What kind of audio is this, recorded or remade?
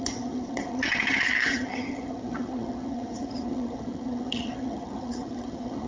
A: remade